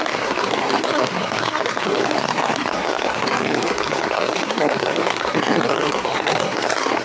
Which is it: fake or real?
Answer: fake